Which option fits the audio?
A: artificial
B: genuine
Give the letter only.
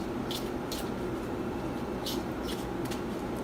B